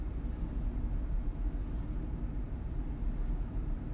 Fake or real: real